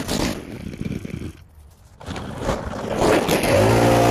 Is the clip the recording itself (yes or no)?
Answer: yes